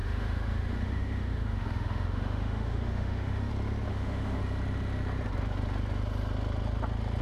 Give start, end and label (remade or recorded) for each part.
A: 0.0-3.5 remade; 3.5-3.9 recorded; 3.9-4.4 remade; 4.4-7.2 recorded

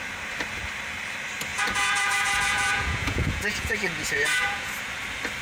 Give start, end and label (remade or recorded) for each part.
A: 0.0-1.5 recorded; 1.5-4.7 remade; 4.7-5.4 recorded

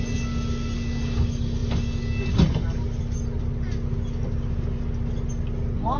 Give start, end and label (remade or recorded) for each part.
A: 0.0-6.0 recorded

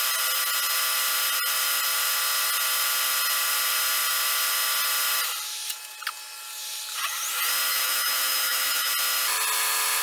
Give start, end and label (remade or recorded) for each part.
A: 0.0-7.7 recorded; 7.7-8.9 remade; 8.9-10.0 recorded

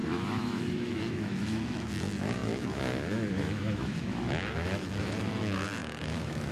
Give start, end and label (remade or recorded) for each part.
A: 0.0-6.5 remade

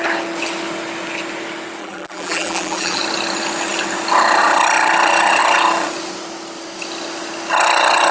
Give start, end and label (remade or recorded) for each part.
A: 0.0-1.8 recorded; 1.8-3.0 remade; 3.0-8.1 recorded

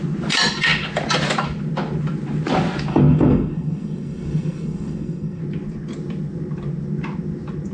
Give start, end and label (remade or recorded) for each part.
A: 0.0-2.9 recorded; 2.9-5.4 remade; 5.4-7.7 recorded